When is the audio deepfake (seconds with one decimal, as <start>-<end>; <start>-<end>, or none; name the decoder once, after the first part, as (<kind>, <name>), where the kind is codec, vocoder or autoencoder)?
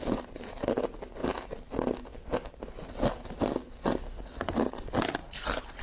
none